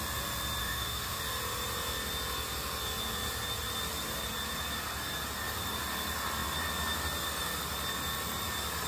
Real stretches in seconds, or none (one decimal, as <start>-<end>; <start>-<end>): 0.0-0.6; 1.2-8.9

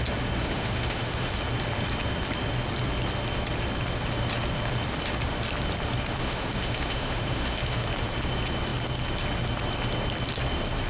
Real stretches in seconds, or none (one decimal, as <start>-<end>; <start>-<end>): 0.0-0.4; 1.3-6.2; 7.9-10.9

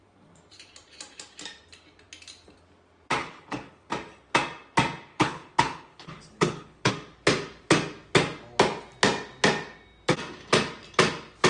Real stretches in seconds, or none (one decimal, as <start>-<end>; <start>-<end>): 0.0-3.2; 3.9-5.1; 6.9-11.5

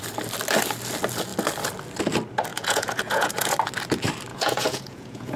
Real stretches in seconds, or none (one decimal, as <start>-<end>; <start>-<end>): 0.0-2.5; 3.5-4.3